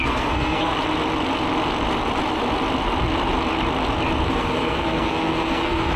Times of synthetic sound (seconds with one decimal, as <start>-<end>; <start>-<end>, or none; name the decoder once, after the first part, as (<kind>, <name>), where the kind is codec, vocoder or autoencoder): 0.0-0.7 (codec, SNAC); 4.3-6.0